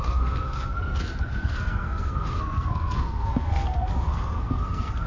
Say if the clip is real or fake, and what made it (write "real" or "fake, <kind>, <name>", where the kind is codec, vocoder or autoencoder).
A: fake, codec, SNAC